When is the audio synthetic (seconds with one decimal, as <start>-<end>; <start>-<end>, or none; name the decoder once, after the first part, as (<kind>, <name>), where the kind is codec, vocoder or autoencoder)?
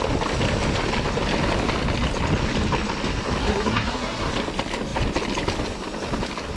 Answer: 3.4-4.3 (codec, SNAC)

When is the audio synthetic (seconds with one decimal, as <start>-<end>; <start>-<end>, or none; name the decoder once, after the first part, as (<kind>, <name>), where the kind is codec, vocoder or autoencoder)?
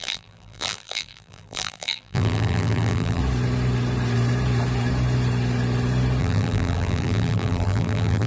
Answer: 0.0-3.2 (vocoder, BigVGAN v2); 6.2-8.3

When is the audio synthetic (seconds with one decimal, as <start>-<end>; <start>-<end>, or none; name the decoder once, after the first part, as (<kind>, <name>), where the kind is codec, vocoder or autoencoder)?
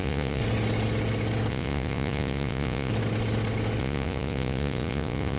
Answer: 0.0-0.4 (vocoder, Vocos); 1.5-2.9; 3.8-5.4